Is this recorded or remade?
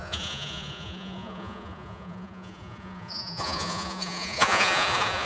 remade